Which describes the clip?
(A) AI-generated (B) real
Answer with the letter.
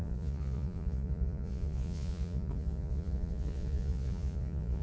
A